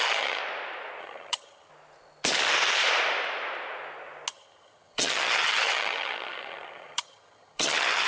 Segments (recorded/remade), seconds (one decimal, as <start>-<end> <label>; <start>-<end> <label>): 0.0-0.4 remade; 0.4-1.0 recorded; 1.0-1.7 remade; 1.7-4.3 recorded; 4.3-8.1 remade